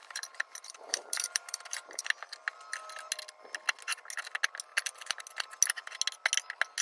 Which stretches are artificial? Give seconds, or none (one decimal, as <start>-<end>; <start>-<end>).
0.0-2.0; 4.7-5.2